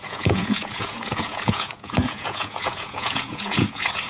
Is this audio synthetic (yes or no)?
yes